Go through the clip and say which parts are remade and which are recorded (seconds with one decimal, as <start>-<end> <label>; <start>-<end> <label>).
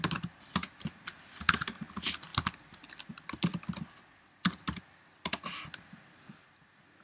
0.0-7.0 recorded